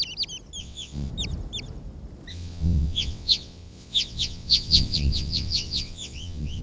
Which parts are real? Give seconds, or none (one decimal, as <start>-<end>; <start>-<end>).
0.0-0.6; 1.1-2.3

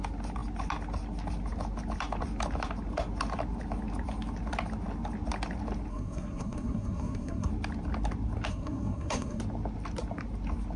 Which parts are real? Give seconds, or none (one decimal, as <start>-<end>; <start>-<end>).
0.0-5.9; 7.5-8.5; 9.4-10.8

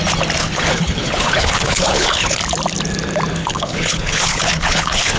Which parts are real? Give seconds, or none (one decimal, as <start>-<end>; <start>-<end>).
0.0-0.4; 2.4-3.4

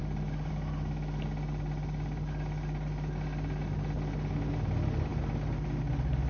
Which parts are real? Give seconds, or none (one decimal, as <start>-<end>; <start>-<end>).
0.0-6.3

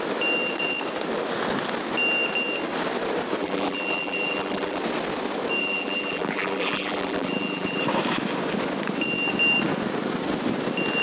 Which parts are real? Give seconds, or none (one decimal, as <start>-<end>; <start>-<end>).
0.0-3.4; 4.8-5.6; 7.8-11.0

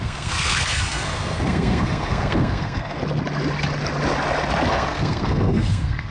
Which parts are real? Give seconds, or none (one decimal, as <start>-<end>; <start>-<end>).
3.0-4.7